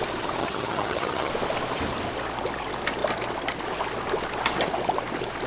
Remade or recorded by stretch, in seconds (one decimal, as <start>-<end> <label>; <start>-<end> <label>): 0.0-0.4 recorded; 0.4-1.3 remade; 1.3-5.5 recorded